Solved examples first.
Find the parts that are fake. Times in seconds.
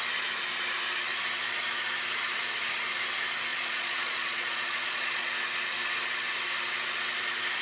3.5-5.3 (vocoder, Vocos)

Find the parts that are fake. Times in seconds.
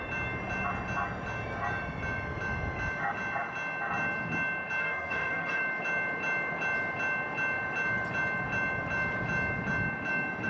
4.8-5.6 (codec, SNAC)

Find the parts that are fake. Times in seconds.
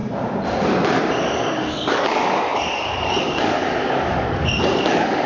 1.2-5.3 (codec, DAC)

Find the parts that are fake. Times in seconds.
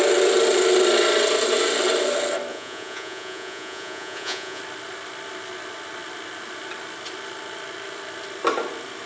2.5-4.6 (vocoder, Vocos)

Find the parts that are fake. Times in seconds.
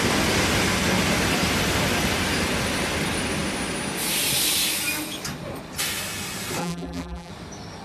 6.6-7.3 (vocoder, BigVGAN v2)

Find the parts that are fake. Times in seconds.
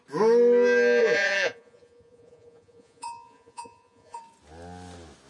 1.0-4.2 (vocoder, Vocos)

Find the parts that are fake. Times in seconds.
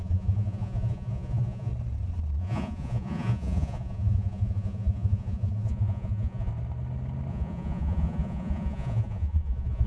0.0-1.7 (vocoder, Vocos); 2.4-6.5; 7.3-9.9